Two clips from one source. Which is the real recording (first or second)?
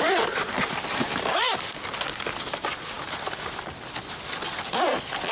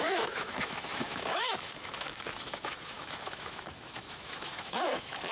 first